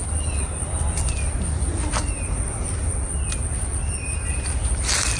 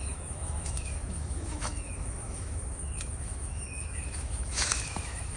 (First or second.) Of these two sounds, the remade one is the second